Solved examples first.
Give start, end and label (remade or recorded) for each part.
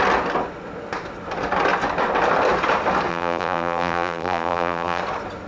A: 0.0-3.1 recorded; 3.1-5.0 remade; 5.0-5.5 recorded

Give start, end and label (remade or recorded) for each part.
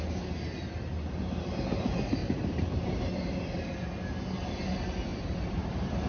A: 0.0-2.2 recorded; 2.2-3.1 remade; 3.1-5.1 recorded; 5.1-6.1 remade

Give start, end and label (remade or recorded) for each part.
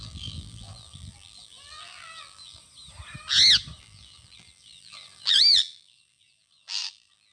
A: 0.0-2.6 remade; 2.6-3.8 recorded; 3.8-7.3 remade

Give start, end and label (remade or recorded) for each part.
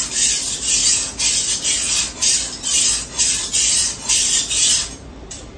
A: 0.0-0.8 remade; 0.8-3.2 recorded; 3.2-5.6 remade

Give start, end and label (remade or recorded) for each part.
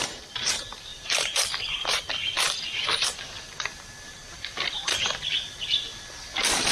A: 0.0-0.9 recorded; 0.9-1.4 remade; 1.4-6.7 recorded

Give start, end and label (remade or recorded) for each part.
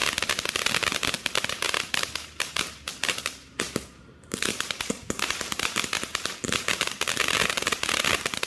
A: 0.0-1.5 recorded; 1.5-6.1 remade; 6.1-6.7 recorded; 6.7-8.5 remade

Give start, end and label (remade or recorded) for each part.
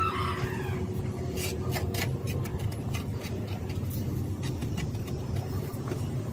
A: 0.0-4.6 recorded; 4.6-6.3 remade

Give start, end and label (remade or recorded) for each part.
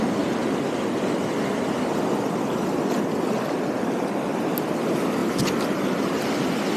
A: 0.0-6.8 recorded